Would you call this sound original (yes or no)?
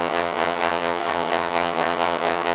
no